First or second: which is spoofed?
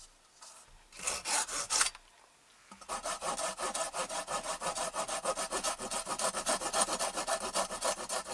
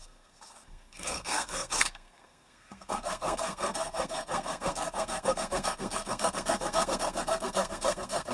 second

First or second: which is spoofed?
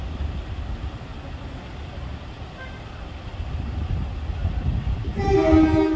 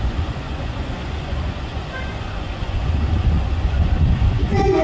second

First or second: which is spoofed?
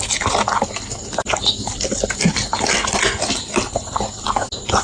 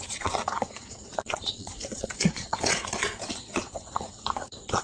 second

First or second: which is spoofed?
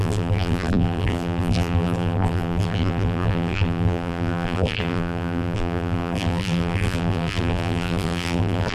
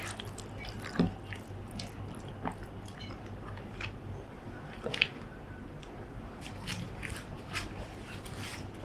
first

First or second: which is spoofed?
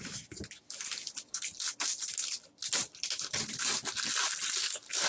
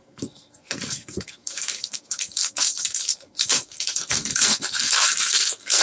second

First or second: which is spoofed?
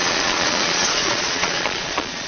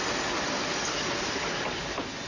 first